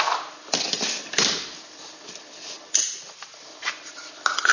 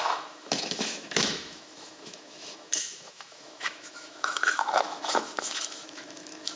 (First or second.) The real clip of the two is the first